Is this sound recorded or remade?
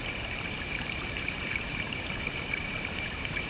remade